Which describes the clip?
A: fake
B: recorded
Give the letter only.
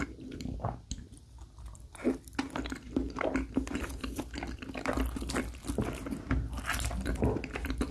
B